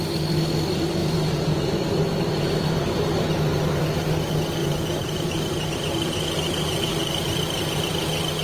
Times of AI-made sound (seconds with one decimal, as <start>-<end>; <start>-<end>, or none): 1.0-3.8; 4.6-5.7; 6.9-7.4